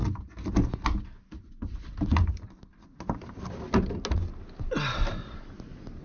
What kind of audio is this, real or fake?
real